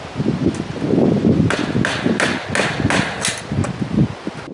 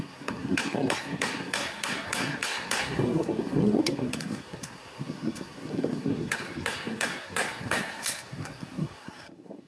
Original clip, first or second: first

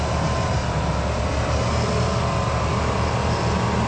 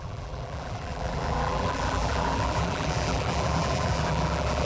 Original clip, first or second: first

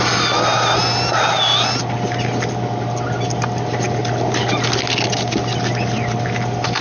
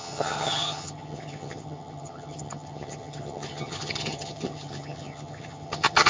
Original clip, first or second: first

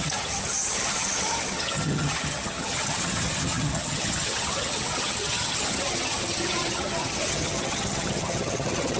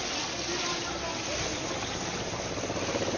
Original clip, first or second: second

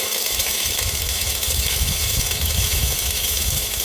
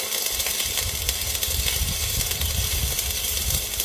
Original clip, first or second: second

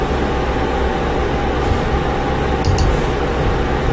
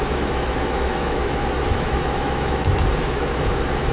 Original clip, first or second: first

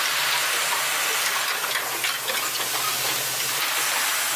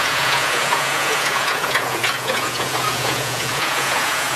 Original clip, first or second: first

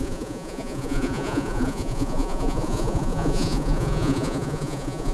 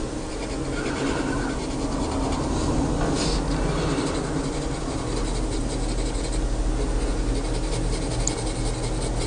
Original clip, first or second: second